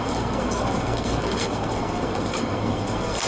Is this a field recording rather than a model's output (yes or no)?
no